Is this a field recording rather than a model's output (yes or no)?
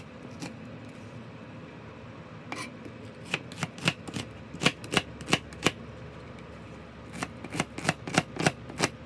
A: yes